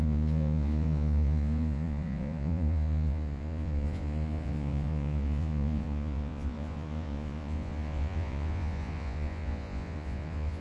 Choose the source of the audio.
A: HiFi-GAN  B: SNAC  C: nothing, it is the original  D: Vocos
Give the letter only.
D